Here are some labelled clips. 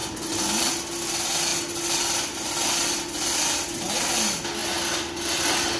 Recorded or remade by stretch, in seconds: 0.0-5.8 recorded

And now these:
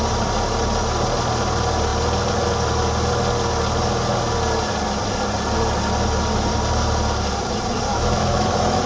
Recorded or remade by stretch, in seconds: 0.0-7.9 recorded; 7.9-8.9 remade